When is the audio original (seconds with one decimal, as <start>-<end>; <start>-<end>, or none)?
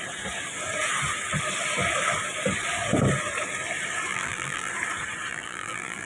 0.0-4.1; 4.7-5.3